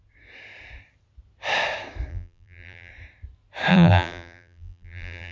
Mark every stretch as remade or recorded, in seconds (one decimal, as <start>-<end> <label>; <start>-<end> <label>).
0.0-2.1 recorded; 2.1-2.9 remade; 2.9-3.7 recorded; 3.7-5.3 remade